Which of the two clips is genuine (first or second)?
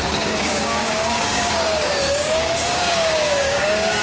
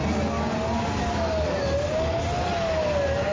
second